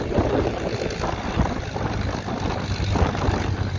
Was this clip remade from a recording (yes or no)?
no